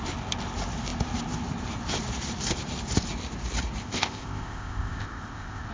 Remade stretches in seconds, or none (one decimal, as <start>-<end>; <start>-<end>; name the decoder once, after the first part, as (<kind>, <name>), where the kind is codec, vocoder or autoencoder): 3.8-5.7 (codec, ZipCodec)